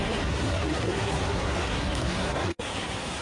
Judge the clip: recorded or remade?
remade